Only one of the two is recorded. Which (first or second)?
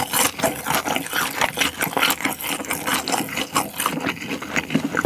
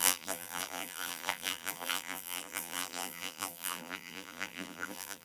first